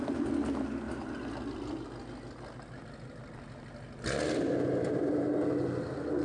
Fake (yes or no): no